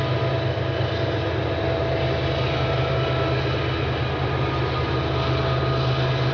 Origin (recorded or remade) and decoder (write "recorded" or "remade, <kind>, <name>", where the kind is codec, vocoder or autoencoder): recorded